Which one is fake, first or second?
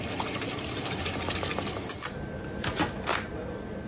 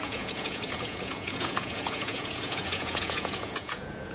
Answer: second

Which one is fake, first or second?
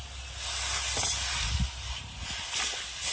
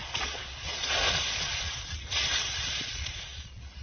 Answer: second